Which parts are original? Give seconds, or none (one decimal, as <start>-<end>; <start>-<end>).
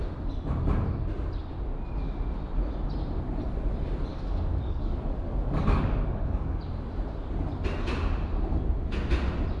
0.0-4.1; 6.6-9.6